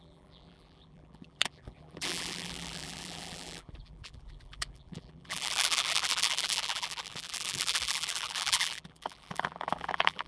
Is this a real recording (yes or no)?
no